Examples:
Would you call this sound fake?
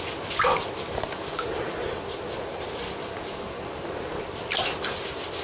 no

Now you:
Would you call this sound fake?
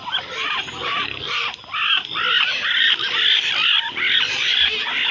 no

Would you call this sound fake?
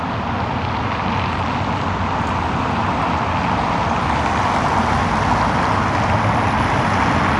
no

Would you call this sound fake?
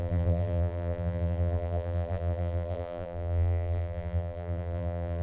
yes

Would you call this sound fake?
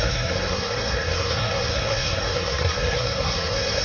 yes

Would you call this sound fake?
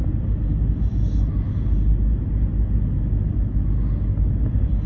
no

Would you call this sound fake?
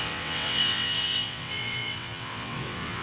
yes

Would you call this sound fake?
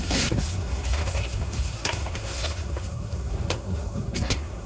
yes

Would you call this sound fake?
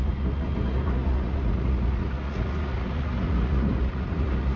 yes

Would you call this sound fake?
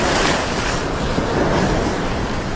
no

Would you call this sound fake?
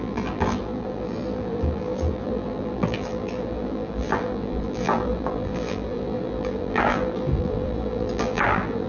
yes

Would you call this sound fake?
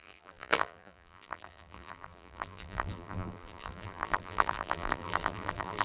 yes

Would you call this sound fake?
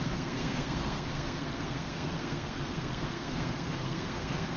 yes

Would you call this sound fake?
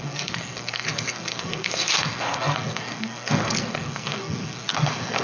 yes